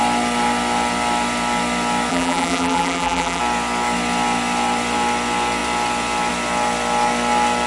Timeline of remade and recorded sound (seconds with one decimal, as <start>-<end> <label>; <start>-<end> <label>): 0.0-2.1 recorded; 2.1-3.4 remade; 3.4-7.7 recorded